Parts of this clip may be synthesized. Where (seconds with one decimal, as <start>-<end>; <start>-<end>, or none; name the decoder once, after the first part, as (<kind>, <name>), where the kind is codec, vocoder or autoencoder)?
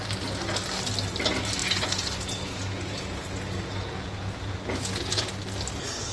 1.6-5.3 (vocoder, Vocos)